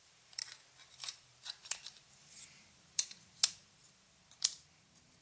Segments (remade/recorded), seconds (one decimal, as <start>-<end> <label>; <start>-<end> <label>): 0.0-0.4 remade; 0.4-0.9 recorded; 0.9-5.2 remade